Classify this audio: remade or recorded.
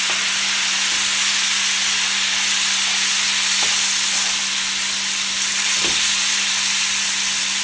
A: recorded